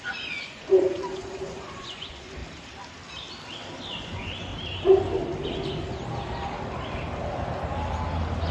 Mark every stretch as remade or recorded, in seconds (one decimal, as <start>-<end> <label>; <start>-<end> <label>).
0.0-2.4 remade; 2.4-3.9 recorded; 3.9-4.5 remade; 4.5-8.5 recorded